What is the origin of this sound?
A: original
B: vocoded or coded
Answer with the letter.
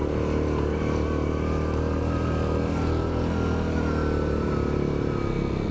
A